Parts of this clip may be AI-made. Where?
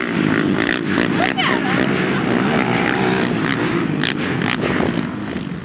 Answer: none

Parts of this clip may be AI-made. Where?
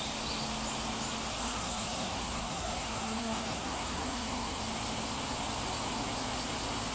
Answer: 1.3-4.6 (codec, SNAC)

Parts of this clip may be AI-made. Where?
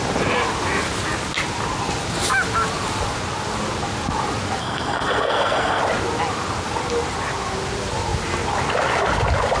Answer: 4.6-5.8 (codec, SNAC)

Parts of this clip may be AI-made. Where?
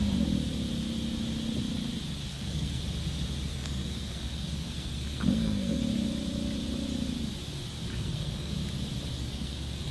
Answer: 2.3-2.8 (codec, SNAC); 3.5-5.8; 7.9-8.5; 9.2-9.9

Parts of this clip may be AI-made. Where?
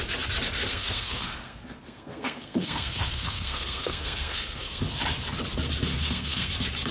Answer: 0.7-4.8 (codec, SNAC); 5.9-6.5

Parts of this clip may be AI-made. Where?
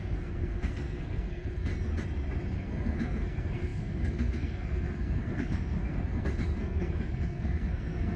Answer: 0.0-1.7 (codec, SNAC); 2.5-8.2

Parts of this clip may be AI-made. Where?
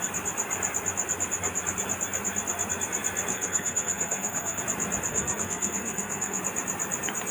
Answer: 3.3-4.6 (codec, SNAC); 5.1-6.4